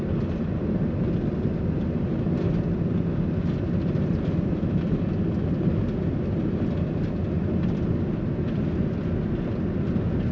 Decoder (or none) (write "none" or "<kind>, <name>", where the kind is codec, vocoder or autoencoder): none